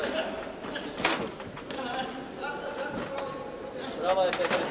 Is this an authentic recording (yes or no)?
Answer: yes